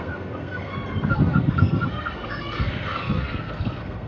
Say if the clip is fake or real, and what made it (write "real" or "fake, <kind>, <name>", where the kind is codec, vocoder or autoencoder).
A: fake, codec, SNAC